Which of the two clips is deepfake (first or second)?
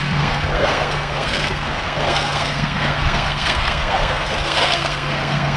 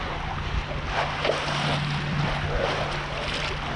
first